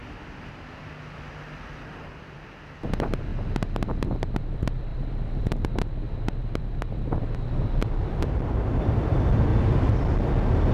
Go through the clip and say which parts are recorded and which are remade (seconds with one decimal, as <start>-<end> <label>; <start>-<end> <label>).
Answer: 0.0-1.3 recorded; 1.3-3.3 remade; 3.3-4.4 recorded; 4.4-9.5 remade; 9.5-10.7 recorded